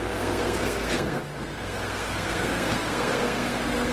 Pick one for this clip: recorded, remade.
remade